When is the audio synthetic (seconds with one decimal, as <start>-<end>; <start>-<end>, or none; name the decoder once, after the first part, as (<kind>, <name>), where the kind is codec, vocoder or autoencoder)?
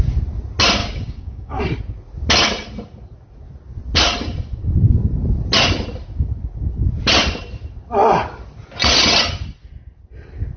0.8-1.6 (codec, DAC)